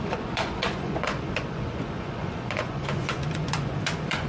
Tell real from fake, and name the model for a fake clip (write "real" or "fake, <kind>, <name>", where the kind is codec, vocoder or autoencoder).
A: fake, vocoder, Vocos